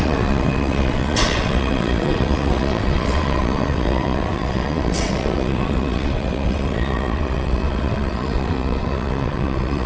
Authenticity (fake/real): fake